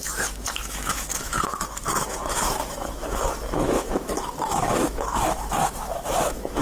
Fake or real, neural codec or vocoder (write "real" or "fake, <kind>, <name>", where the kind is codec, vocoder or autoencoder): fake, autoencoder, DAC-VAE